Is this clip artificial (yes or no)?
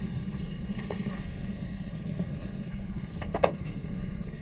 yes